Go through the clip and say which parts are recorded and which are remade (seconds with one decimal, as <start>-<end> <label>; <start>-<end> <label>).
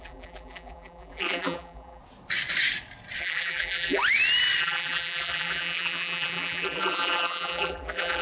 0.0-2.0 remade; 2.0-3.2 recorded; 3.2-4.0 remade; 4.0-4.6 recorded; 4.6-8.2 remade